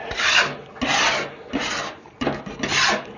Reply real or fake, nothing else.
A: real